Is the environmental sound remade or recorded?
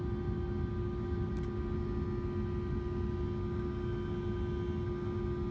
recorded